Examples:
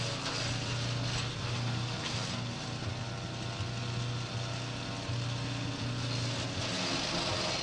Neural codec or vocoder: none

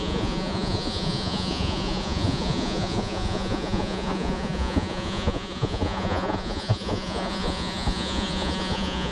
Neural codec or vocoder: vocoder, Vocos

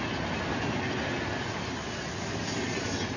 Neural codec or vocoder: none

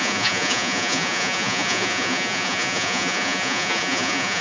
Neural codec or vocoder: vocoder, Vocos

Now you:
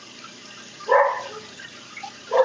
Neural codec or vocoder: none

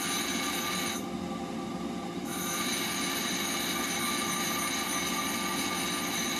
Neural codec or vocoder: none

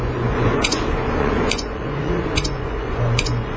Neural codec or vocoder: vocoder, Vocos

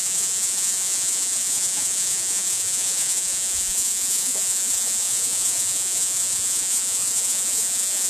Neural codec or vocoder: vocoder, Vocos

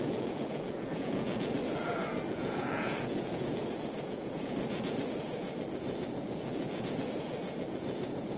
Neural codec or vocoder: vocoder, Vocos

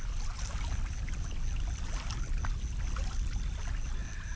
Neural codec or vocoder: none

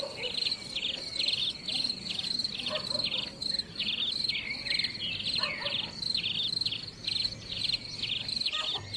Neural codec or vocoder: none